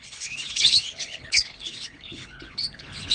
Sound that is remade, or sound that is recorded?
remade